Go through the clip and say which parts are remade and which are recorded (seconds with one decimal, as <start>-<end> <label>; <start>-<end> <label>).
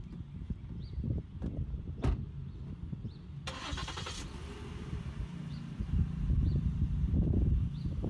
0.0-2.4 remade; 2.4-5.4 recorded; 5.4-8.1 remade